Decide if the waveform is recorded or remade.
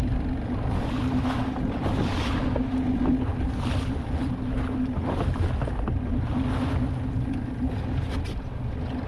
recorded